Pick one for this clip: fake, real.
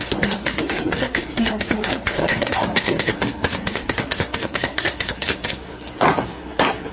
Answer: fake